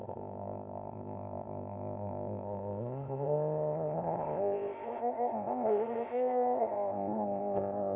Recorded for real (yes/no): no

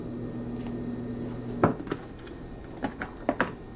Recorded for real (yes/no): yes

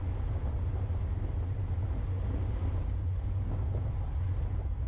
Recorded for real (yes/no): yes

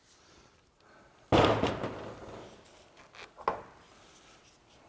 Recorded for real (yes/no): yes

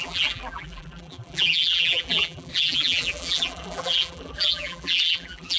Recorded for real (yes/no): no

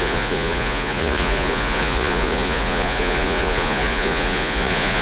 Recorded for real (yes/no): no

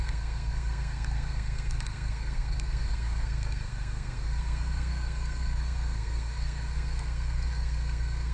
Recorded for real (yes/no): no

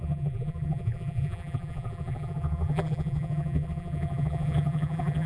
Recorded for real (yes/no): no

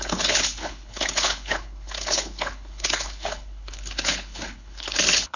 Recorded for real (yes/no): no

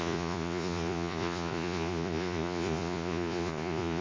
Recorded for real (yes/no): no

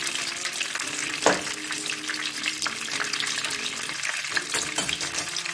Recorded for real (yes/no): yes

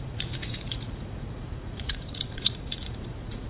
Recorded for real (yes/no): no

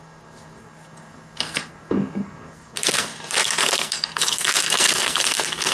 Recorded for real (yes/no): no